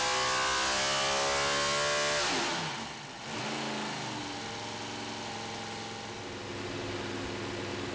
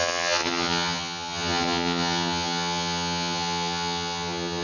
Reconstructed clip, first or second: second